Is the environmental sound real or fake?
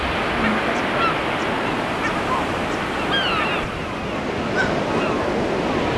real